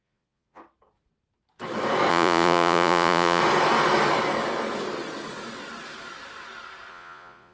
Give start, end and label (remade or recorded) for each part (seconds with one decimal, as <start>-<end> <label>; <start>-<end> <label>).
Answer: 0.0-0.6 remade; 0.6-2.1 recorded; 2.1-3.4 remade; 3.4-6.9 recorded; 6.9-7.5 remade